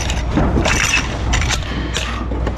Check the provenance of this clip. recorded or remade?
recorded